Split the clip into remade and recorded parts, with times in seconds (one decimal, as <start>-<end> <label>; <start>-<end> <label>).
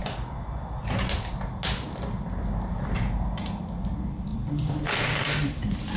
0.0-4.3 recorded; 4.3-6.0 remade